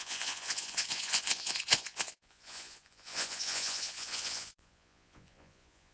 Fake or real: fake